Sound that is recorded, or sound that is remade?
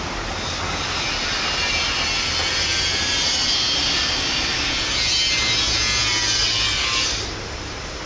recorded